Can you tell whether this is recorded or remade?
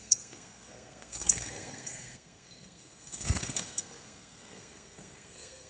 remade